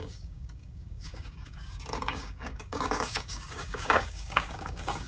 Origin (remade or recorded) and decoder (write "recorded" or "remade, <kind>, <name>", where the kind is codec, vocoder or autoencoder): remade, codec, DAC